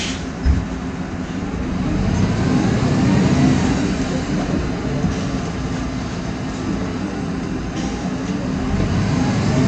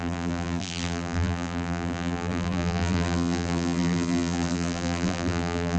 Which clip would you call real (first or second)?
first